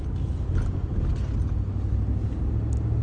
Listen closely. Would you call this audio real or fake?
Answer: real